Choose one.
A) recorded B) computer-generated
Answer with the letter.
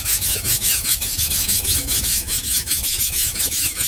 B